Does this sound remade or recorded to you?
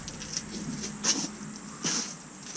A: recorded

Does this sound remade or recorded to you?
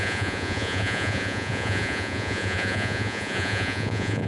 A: remade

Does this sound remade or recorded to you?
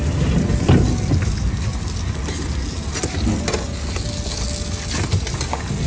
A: recorded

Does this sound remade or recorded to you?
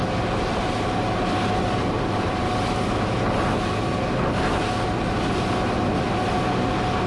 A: recorded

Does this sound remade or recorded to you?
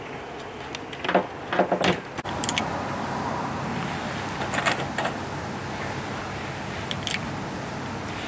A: recorded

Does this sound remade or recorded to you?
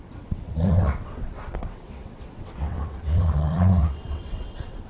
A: remade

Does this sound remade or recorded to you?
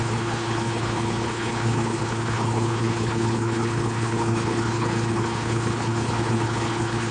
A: remade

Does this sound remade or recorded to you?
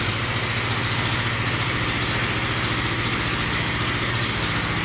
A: recorded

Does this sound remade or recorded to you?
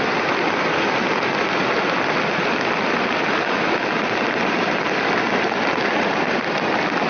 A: recorded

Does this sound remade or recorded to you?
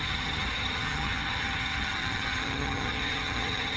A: remade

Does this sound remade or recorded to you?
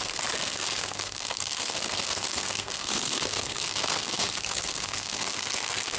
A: remade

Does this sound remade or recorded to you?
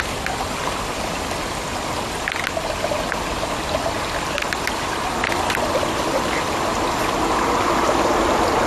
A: recorded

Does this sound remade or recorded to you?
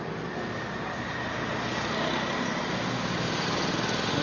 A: recorded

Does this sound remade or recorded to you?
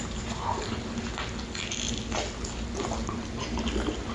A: recorded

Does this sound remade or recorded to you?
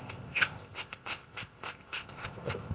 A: remade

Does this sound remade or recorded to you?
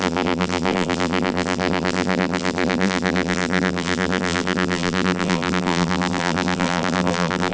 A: remade